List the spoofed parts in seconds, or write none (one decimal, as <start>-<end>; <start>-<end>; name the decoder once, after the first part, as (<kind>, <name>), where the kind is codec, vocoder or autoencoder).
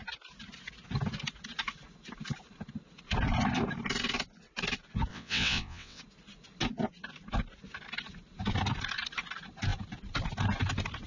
5.1-6.0 (vocoder, WaveNeXt)